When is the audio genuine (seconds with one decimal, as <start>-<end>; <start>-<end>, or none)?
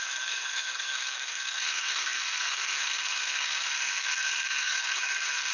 none